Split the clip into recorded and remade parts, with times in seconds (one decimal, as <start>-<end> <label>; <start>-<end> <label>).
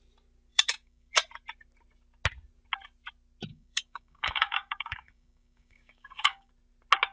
0.0-0.5 recorded; 0.5-1.1 remade; 1.1-3.5 recorded; 3.5-6.5 remade; 6.5-7.1 recorded